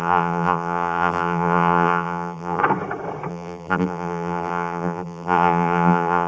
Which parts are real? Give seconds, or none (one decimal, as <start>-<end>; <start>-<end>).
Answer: 2.6-3.3